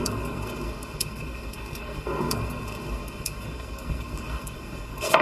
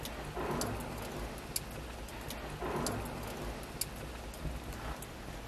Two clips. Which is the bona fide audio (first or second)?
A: second